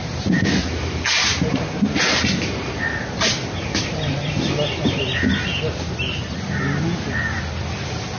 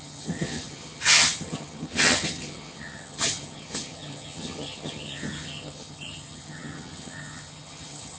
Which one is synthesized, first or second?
second